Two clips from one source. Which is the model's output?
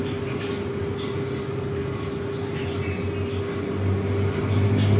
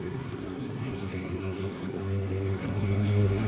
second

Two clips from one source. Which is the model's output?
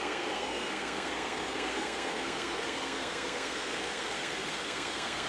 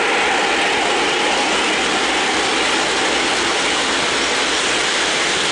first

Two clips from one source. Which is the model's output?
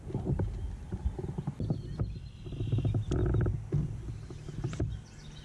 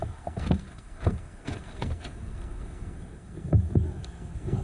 second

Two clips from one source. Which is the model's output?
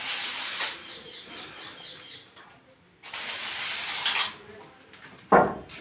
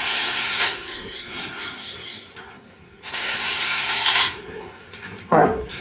second